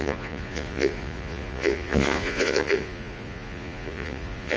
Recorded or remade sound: remade